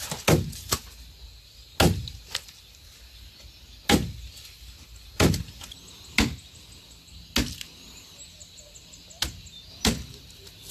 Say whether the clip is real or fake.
real